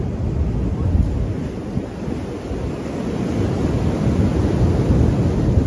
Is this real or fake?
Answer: real